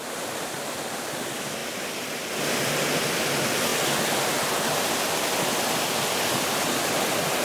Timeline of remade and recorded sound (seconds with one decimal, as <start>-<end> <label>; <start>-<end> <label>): 0.0-7.4 recorded